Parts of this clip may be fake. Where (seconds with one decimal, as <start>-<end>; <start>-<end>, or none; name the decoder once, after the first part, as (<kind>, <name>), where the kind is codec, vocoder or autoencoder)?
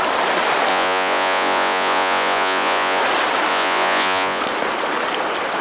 0.7-3.0 (vocoder, Vocos); 3.5-4.4